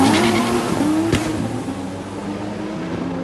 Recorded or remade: recorded